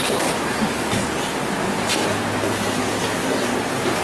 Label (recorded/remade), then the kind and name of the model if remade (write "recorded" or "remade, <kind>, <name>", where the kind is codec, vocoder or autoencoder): recorded